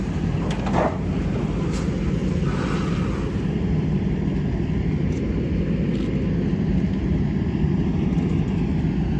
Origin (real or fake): real